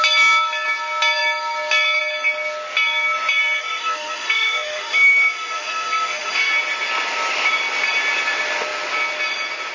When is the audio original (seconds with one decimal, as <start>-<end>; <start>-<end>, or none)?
0.0-3.6; 6.5-9.7